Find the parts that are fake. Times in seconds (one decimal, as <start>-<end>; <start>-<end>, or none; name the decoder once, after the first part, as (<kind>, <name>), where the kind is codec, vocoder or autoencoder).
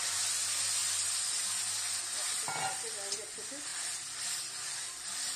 3.7-5.4 (vocoder, BigVGAN v2)